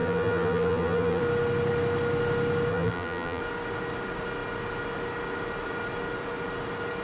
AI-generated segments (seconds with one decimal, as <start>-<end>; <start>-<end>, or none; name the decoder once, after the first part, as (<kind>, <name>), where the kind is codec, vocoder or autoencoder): 0.0-1.2 (vocoder, BigVGAN v2); 2.7-3.4